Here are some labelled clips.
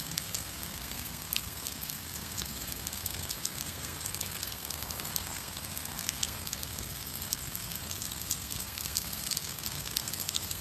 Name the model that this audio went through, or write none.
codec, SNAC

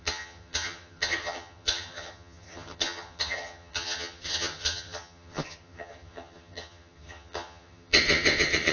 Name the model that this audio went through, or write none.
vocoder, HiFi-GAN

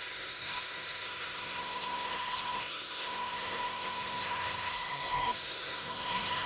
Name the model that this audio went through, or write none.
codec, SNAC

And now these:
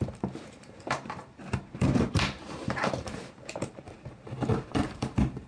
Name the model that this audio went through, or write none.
vocoder, BigVGAN v2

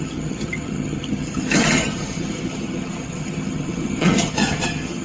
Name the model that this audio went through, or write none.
vocoder, HiFi-GAN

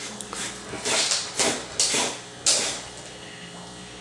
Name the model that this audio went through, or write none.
none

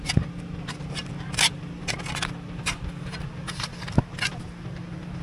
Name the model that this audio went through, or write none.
none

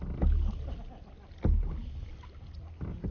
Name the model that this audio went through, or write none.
none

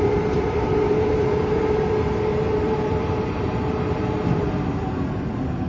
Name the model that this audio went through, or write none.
vocoder, BigVGAN v2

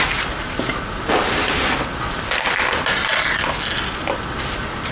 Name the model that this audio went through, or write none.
none